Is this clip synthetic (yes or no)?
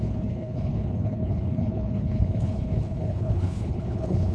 yes